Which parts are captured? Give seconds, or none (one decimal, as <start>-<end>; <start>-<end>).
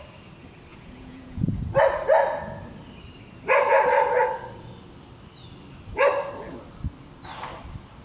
0.0-0.7; 1.6-8.0